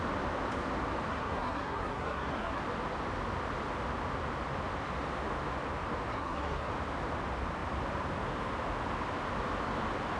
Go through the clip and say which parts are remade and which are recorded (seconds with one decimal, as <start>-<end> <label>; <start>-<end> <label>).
0.0-1.1 recorded; 1.1-2.6 remade; 2.6-6.1 recorded; 6.1-6.7 remade; 6.7-10.2 recorded